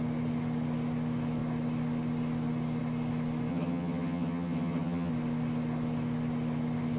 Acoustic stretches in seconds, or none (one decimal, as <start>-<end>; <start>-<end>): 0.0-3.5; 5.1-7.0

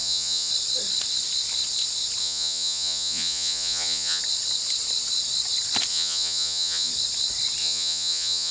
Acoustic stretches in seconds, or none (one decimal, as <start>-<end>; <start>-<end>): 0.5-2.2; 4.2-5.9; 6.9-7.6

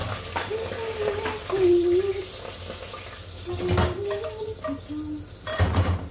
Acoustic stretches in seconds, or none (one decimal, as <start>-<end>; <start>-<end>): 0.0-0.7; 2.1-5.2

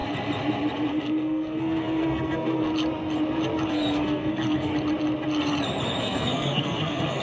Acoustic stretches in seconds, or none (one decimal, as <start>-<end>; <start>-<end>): 0.0-0.9; 2.7-3.7; 4.7-6.0

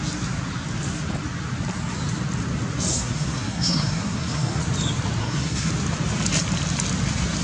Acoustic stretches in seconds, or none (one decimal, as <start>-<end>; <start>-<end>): 0.0-2.9; 4.6-5.2; 5.7-7.4

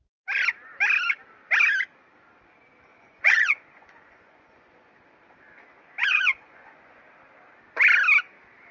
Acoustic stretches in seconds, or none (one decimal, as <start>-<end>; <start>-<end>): 0.0-2.9; 4.9-6.0; 7.0-8.7

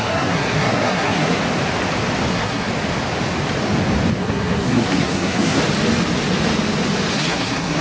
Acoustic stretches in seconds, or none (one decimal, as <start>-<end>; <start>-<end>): 1.4-2.3; 2.7-4.2; 5.6-7.1